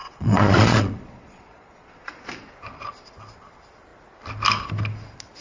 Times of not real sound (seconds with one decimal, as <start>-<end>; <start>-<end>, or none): 0.0-2.1